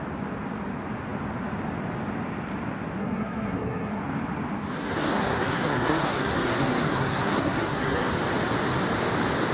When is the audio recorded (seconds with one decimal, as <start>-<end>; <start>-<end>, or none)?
0.0-3.0; 4.0-4.7; 8.1-9.5